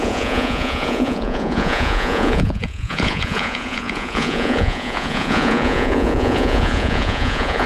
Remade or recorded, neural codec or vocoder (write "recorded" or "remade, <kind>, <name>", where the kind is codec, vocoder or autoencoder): remade, vocoder, Vocos